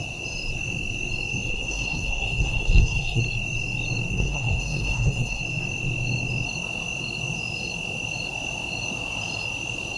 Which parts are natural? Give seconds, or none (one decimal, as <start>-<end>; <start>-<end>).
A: 0.0-1.5; 3.2-4.1; 5.4-10.0